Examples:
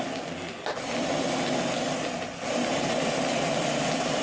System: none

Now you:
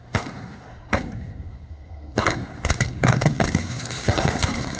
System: codec, SNAC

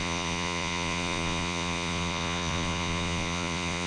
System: vocoder, Vocos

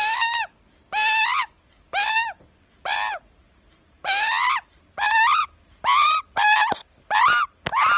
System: none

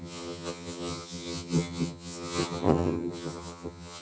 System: vocoder, HiFi-GAN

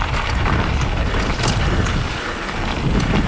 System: none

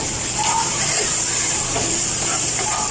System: vocoder, BigVGAN v2